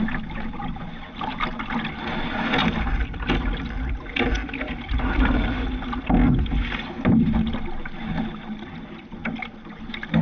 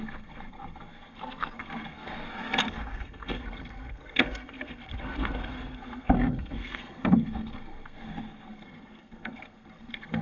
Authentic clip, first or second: first